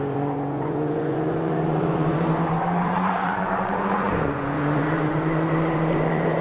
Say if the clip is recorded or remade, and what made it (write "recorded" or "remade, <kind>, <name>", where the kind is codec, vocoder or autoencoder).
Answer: remade, vocoder, Vocos